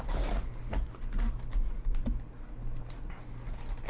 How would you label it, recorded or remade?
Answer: recorded